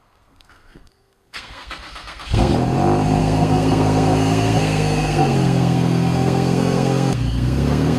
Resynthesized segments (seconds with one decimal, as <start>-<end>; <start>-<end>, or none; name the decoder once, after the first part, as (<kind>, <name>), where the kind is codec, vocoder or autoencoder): 0.0-2.5 (codec, SNAC); 3.2-8.0